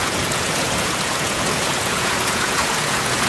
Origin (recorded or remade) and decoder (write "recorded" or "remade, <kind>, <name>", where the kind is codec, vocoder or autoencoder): remade, vocoder, Vocos